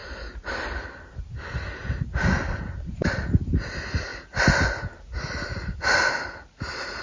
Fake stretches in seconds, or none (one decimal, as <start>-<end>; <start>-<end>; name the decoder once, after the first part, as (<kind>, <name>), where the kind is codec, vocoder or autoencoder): none